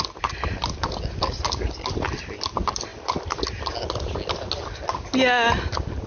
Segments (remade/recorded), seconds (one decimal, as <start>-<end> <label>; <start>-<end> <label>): 0.0-6.1 recorded